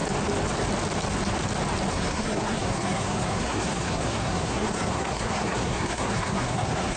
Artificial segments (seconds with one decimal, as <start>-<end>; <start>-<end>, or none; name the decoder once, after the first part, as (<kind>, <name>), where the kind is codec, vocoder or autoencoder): 1.9-7.0 (codec, SNAC)